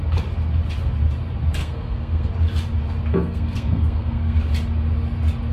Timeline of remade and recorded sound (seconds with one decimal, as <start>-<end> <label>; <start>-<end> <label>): 0.0-1.6 recorded; 1.6-2.3 remade; 2.3-3.1 recorded; 3.1-4.4 remade; 4.4-5.5 recorded